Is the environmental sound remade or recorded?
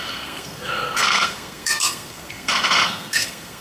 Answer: remade